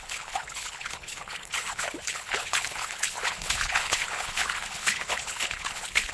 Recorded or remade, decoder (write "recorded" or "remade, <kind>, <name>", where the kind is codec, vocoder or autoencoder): remade, codec, HILCodec